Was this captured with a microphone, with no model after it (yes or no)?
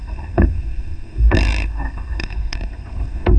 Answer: no